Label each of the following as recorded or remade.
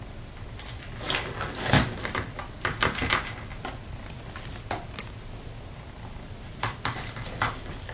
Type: recorded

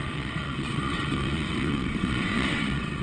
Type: remade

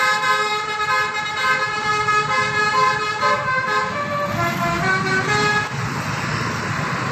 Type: recorded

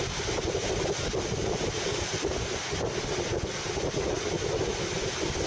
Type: recorded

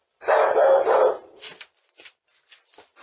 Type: recorded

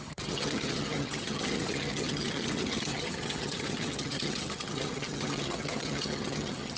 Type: remade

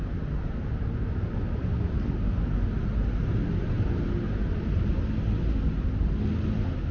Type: recorded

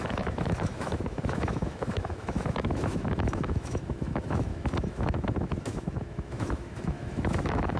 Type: remade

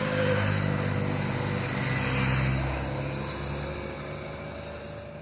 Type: recorded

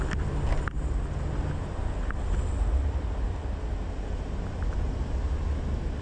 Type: recorded